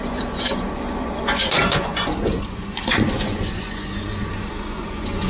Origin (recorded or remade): remade